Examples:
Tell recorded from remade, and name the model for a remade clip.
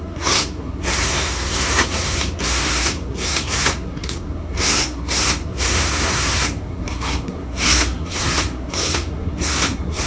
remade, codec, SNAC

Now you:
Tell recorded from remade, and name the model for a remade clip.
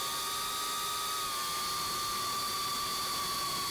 recorded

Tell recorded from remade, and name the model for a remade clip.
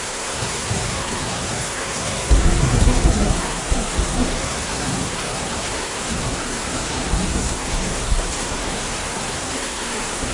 remade, codec, SNAC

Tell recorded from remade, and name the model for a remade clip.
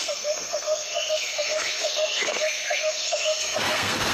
remade, codec, SNAC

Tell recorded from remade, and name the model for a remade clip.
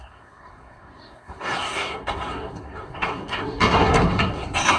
remade, codec, SNAC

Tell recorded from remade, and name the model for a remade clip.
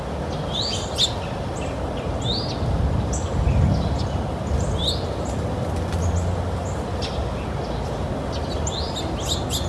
recorded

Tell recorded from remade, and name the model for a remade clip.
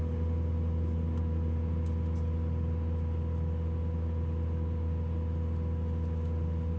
recorded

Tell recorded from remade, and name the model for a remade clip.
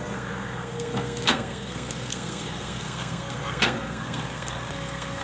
remade, codec, SNAC